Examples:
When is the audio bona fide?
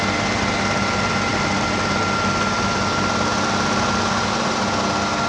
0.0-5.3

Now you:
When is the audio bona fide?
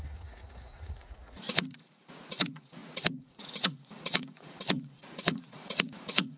none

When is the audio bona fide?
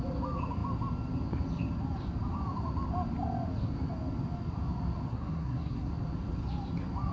0.0-5.1; 5.9-7.1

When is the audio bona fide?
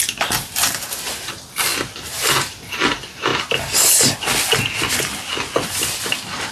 3.3-4.9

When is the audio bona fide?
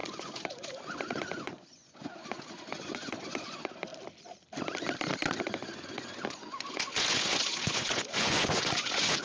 3.9-5.4